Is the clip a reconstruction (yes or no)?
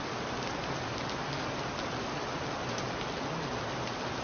no